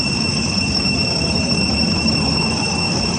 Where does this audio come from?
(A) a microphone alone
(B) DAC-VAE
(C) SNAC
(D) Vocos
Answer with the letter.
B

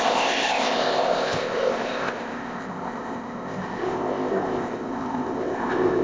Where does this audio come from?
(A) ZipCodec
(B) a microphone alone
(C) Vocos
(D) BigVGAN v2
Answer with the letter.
A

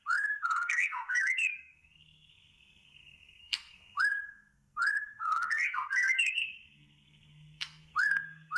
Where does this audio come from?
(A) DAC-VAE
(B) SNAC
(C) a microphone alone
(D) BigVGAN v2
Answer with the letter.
B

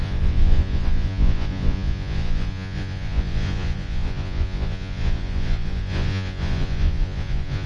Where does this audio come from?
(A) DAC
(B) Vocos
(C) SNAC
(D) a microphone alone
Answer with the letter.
B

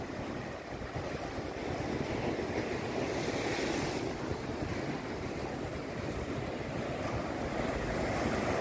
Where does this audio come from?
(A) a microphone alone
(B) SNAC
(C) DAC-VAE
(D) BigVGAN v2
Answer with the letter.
A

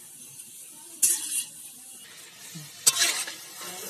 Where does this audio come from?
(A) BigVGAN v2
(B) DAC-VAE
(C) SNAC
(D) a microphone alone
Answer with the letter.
D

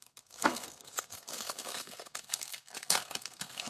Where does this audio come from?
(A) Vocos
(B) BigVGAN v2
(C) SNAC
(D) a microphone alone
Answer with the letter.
C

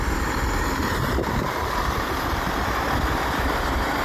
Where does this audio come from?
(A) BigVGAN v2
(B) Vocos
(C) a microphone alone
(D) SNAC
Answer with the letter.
C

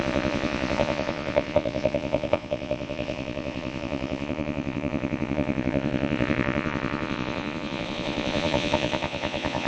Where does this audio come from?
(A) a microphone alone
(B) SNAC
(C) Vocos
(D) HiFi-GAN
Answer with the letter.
C